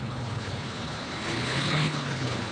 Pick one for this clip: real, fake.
fake